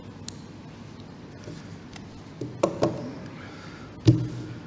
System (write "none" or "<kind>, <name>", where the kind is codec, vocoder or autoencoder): none